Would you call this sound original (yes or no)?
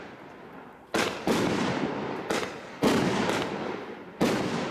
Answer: yes